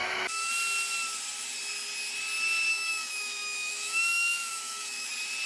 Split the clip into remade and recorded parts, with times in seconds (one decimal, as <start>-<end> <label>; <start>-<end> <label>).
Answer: 0.0-0.5 remade; 0.5-2.7 recorded; 2.7-5.1 remade; 5.1-5.5 recorded